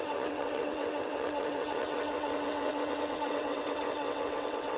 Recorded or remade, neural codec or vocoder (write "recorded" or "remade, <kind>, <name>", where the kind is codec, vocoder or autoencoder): remade, vocoder, WaveNeXt